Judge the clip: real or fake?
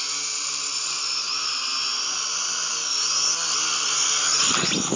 real